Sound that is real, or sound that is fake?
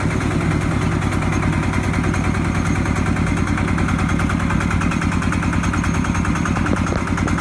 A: real